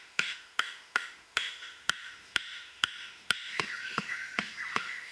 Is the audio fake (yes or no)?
yes